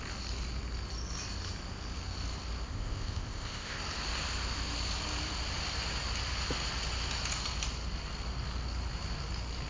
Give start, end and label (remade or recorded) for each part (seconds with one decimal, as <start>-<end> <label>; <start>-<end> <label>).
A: 0.0-2.7 recorded; 2.7-3.8 remade; 3.8-9.7 recorded